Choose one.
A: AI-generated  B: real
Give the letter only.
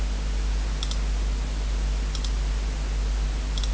B